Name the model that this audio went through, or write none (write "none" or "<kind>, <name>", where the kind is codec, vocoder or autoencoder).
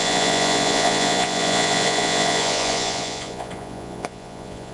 vocoder, Vocos